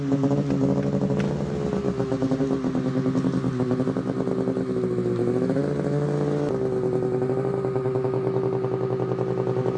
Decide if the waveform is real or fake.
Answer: real